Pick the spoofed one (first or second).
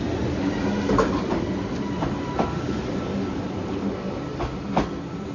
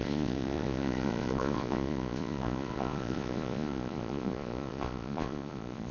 second